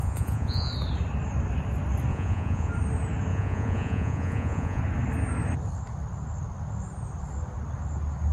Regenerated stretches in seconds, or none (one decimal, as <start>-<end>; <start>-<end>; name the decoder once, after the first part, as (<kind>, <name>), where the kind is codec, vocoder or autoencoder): 0.0-0.7 (vocoder, Vocos); 2.1-2.7; 3.3-4.8